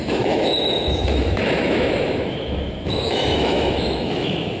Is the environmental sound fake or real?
fake